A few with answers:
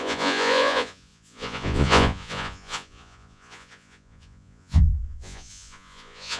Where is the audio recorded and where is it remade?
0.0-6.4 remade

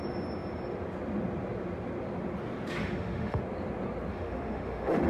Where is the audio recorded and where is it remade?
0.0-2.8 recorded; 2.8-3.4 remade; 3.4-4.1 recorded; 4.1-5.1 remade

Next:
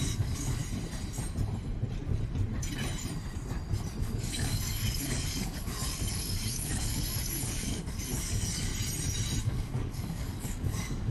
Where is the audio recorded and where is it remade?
0.0-0.6 remade; 0.6-4.0 recorded; 4.0-8.7 remade; 8.7-9.4 recorded; 9.4-11.1 remade